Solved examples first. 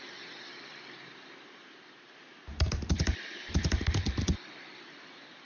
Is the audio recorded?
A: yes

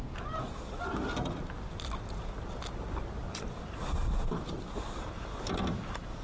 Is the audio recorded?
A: yes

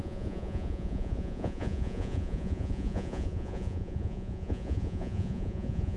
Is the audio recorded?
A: no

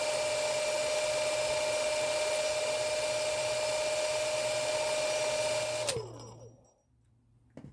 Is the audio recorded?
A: yes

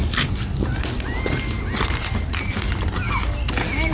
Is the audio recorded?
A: yes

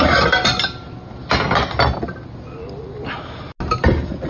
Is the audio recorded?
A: yes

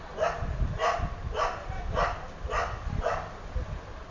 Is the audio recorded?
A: yes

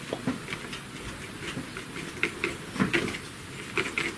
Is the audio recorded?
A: yes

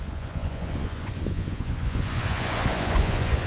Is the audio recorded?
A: no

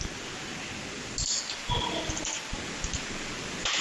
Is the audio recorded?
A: yes